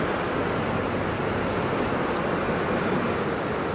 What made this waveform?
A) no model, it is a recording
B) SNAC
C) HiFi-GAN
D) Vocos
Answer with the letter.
A